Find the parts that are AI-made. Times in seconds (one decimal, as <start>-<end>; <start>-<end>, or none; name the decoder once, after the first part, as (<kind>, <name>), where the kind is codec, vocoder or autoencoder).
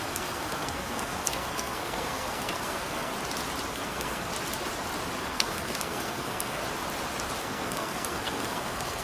0.0-3.1 (codec, SNAC); 3.7-4.3; 5.2-6.6; 7.4-9.0